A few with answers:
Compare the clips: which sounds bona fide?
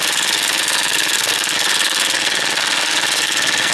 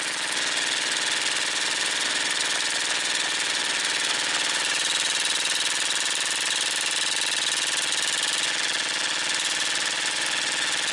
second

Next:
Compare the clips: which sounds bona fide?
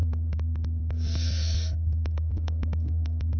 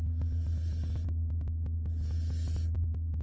second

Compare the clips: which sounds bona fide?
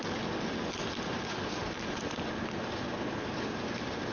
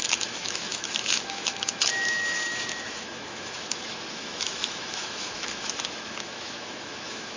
first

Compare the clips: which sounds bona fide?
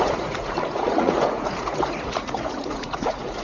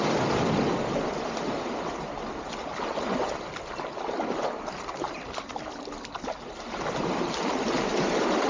second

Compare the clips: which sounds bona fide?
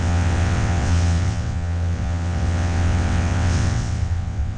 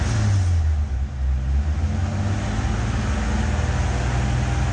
second